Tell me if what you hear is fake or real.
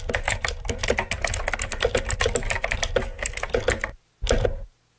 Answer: real